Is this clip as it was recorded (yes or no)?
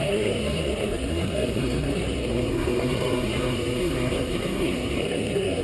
no